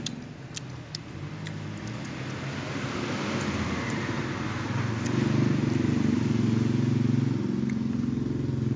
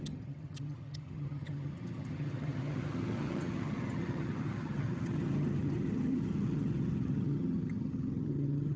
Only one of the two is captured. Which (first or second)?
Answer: first